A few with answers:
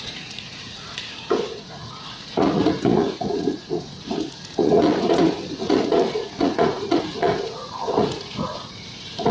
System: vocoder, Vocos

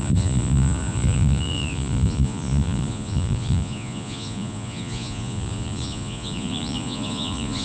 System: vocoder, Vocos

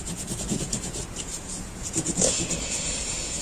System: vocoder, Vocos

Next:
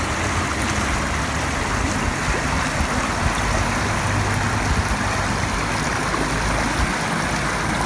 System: none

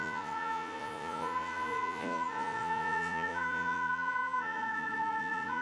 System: vocoder, Vocos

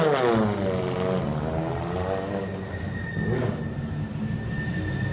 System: none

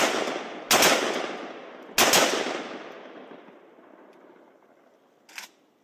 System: none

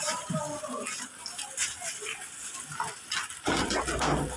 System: none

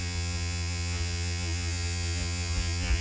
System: vocoder, Vocos